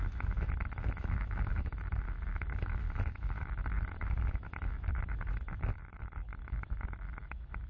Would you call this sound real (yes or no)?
no